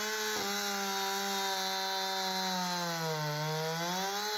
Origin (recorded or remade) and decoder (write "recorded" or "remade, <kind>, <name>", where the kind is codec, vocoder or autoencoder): recorded